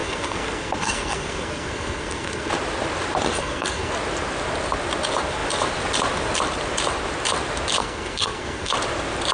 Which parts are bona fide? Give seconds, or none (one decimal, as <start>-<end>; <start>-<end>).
2.5-3.4; 3.9-7.8; 8.7-9.3